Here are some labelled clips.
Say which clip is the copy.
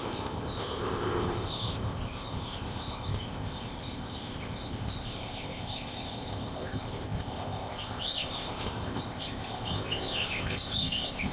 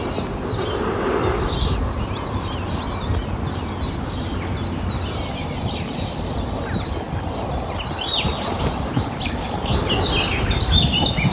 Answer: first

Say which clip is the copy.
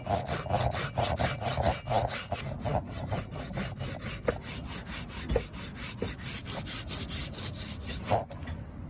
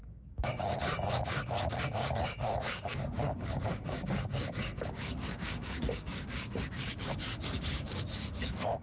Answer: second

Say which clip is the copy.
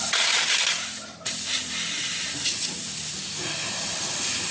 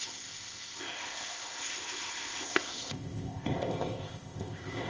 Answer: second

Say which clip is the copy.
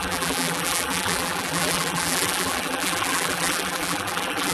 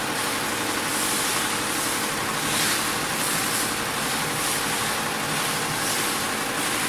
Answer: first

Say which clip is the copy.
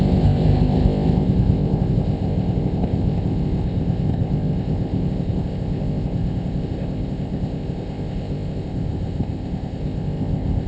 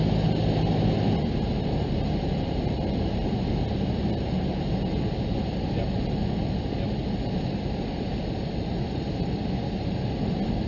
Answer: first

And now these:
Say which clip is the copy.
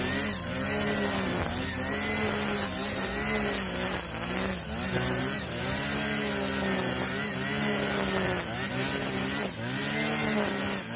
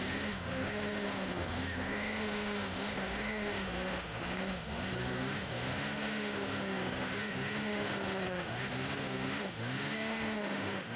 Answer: second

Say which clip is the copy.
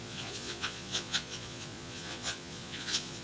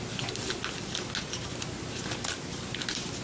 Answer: first